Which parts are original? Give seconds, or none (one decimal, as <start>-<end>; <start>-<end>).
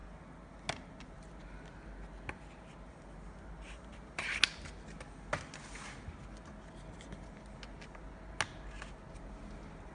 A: 0.0-9.9